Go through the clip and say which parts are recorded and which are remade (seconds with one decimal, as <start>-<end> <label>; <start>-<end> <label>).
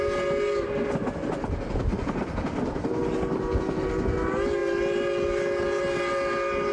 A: 0.0-6.7 recorded